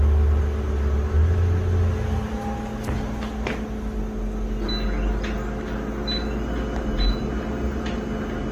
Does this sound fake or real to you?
real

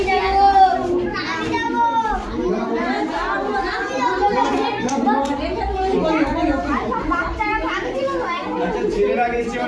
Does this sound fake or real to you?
real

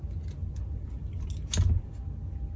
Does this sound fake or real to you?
real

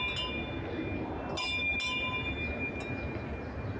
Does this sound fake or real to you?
real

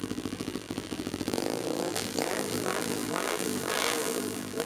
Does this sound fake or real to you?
fake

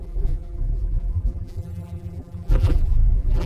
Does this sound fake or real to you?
fake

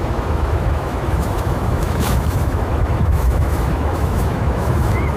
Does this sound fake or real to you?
fake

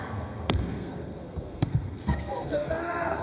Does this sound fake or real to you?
fake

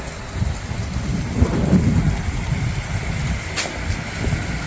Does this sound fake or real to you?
real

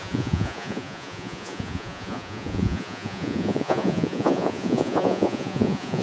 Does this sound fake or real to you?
fake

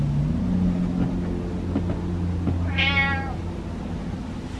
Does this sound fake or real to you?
real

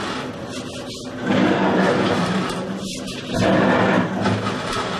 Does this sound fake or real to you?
real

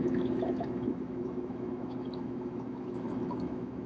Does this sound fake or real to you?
fake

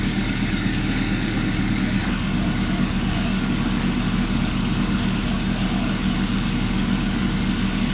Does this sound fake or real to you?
fake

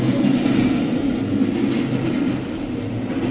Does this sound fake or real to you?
real